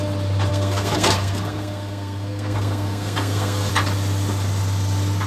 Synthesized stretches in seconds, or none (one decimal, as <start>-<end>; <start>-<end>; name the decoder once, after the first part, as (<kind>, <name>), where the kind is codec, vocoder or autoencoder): 0.5-3.7 (codec, SNAC)